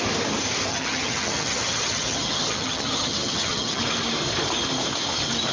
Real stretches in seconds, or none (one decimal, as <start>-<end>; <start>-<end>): 0.0-0.7; 3.8-5.5